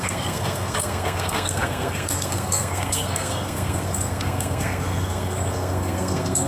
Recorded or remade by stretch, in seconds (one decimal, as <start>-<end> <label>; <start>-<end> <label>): 0.0-6.5 remade